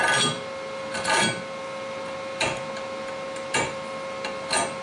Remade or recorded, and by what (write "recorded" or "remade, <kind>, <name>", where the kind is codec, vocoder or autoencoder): recorded